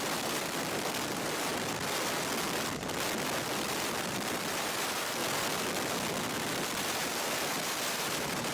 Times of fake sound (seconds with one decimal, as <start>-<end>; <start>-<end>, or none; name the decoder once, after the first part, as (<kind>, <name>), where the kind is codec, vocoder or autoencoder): 0.0-1.5 (vocoder, BigVGAN v2); 3.4-5.2; 6.3-8.5